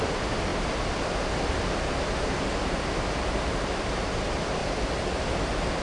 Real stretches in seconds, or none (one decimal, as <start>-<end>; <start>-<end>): 0.0-4.6; 5.2-5.8